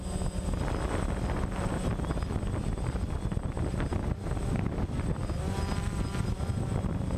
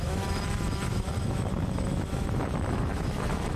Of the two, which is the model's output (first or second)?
second